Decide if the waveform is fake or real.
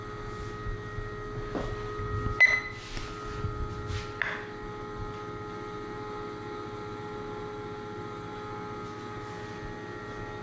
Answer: real